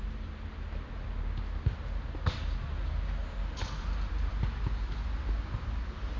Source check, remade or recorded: recorded